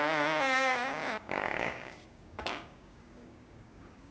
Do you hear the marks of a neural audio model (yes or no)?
yes